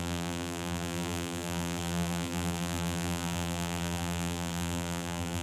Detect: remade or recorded remade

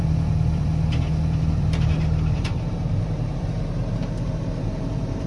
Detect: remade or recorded remade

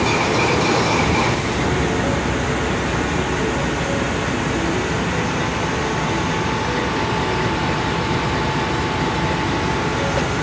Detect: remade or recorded recorded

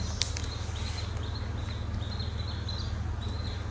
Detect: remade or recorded recorded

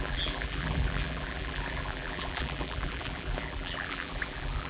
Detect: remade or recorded remade